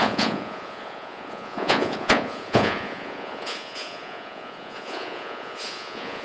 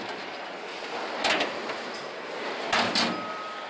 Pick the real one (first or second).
second